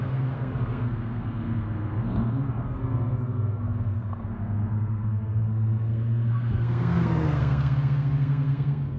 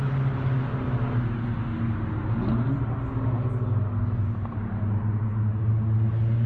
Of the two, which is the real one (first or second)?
second